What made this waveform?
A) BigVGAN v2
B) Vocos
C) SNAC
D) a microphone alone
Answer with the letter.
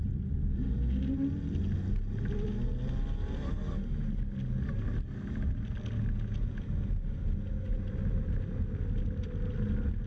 D